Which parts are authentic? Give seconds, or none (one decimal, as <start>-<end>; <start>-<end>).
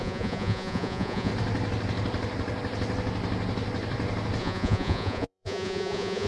1.3-4.4